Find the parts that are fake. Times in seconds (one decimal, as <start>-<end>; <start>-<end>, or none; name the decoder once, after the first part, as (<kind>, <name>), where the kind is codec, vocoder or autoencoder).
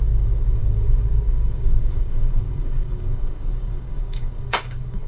0.0-5.1 (codec, DAC)